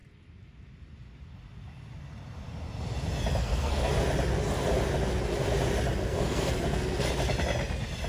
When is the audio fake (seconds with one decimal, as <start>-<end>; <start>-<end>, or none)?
3.4-3.9; 6.0-7.1